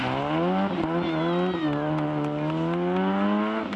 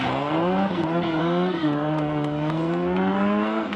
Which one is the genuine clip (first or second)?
first